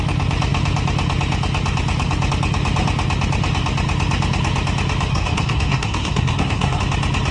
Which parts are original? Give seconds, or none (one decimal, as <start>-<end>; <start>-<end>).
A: 0.0-5.1; 6.8-7.3